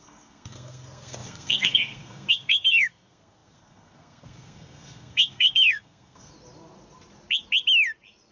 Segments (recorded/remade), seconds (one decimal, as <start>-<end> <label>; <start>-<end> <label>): 0.0-6.3 remade; 6.3-8.3 recorded